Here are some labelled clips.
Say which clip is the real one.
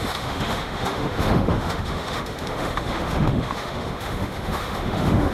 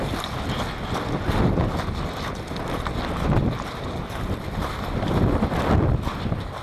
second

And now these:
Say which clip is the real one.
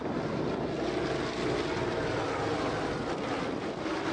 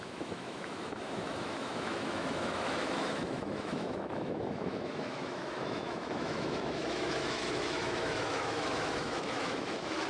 first